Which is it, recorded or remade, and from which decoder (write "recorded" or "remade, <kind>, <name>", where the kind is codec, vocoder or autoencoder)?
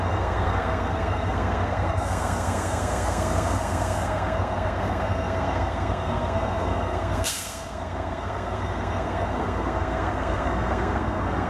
remade, codec, SNAC